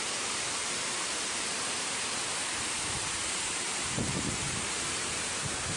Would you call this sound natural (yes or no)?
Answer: no